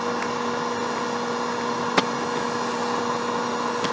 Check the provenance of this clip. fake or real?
real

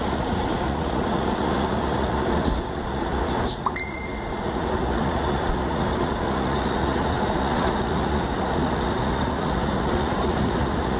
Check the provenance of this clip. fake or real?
fake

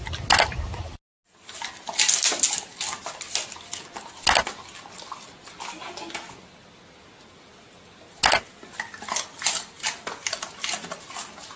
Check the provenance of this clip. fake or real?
real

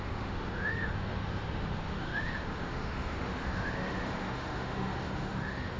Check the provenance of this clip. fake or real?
fake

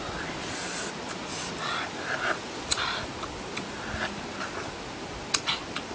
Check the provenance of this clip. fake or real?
real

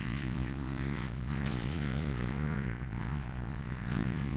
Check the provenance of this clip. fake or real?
fake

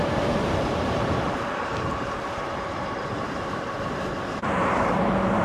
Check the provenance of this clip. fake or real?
fake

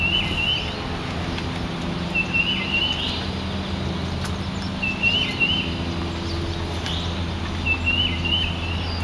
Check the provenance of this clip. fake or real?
real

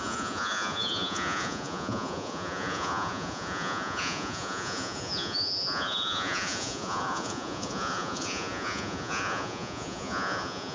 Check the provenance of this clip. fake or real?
fake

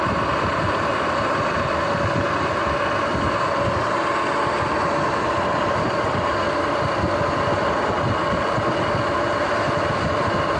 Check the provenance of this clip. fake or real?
real